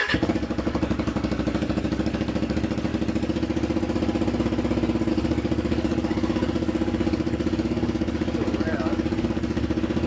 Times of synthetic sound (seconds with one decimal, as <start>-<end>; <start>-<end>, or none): 0.0-2.9; 5.1-10.1